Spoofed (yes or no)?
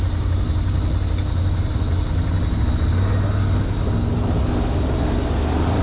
no